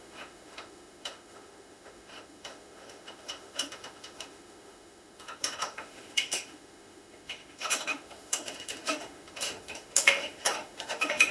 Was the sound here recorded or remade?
remade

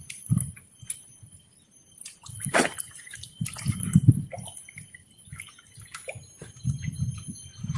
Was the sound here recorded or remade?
recorded